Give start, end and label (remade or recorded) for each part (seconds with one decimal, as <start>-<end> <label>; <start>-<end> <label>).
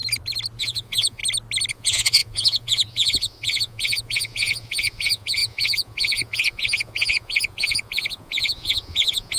0.0-0.6 recorded; 0.6-1.2 remade; 1.2-1.7 recorded; 1.7-9.4 remade